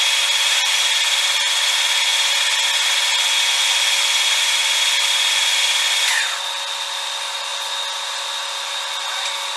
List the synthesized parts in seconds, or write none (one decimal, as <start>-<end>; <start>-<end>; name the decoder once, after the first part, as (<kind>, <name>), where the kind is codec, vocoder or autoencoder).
none